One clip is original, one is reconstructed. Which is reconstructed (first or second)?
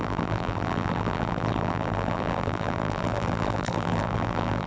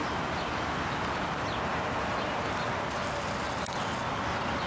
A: first